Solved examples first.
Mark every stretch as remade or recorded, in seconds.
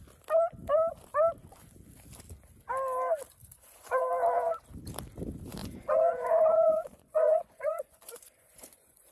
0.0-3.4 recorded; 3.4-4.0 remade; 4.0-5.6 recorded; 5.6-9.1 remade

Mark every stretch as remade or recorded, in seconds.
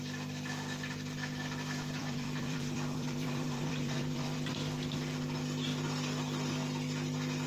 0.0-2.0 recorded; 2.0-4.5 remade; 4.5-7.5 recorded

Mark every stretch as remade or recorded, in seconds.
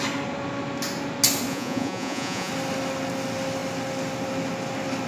0.0-1.5 recorded; 1.5-2.5 remade; 2.5-5.1 recorded